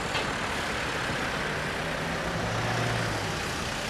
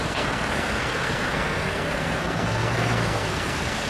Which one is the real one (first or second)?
first